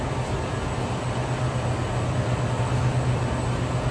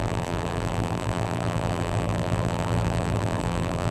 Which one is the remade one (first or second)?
second